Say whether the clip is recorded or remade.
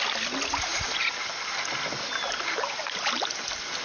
recorded